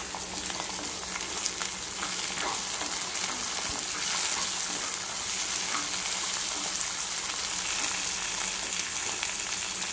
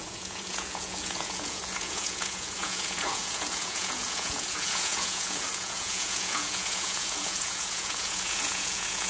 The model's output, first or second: second